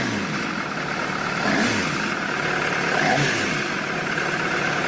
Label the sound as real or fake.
real